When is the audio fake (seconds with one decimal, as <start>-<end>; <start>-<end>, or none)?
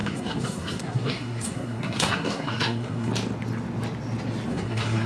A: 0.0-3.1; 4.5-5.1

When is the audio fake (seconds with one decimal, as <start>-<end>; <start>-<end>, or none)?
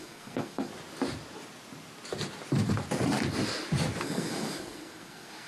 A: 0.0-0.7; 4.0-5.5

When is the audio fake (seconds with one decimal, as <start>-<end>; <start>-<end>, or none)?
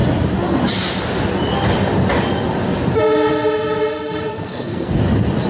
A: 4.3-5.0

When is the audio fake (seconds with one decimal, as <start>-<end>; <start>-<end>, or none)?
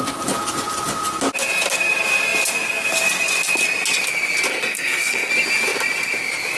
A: 4.5-5.3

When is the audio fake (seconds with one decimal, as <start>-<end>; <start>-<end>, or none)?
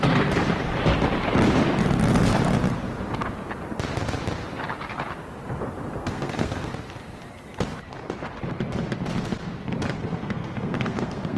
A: 6.0-6.7; 10.1-11.4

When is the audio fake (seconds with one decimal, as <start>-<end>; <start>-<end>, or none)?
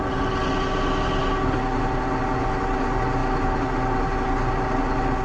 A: none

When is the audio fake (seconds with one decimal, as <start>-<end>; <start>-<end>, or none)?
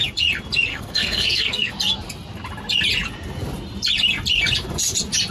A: 0.7-1.7